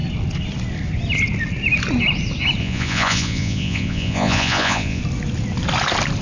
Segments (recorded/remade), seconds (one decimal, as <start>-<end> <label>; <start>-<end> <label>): 0.0-2.6 recorded; 2.6-5.0 remade; 5.0-6.2 recorded